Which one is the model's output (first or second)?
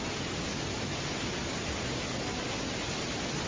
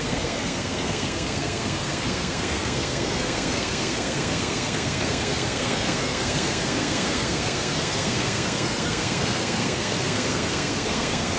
second